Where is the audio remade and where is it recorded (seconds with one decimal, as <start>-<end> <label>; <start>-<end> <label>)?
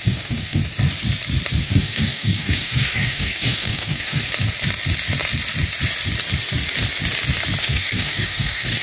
0.0-0.6 remade; 0.6-1.6 recorded; 1.6-4.3 remade; 4.3-7.6 recorded; 7.6-8.8 remade